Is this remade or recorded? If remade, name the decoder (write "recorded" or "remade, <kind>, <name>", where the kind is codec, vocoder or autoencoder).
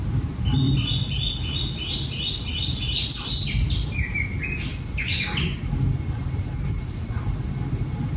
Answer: recorded